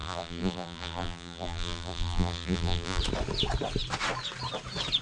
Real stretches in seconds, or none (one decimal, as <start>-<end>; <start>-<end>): 3.0-5.0